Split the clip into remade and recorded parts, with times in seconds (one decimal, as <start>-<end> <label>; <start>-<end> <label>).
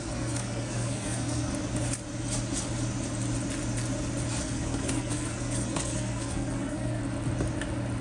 0.0-1.5 remade; 1.5-4.4 recorded; 4.4-7.0 remade; 7.0-8.0 recorded